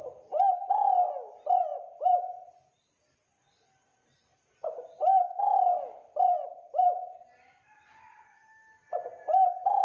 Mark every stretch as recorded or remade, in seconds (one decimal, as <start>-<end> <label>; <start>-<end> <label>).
0.0-9.8 recorded